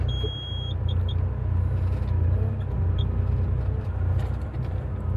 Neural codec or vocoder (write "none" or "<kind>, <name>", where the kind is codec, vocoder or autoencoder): none